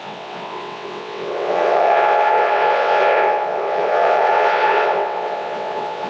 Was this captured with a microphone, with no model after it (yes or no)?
no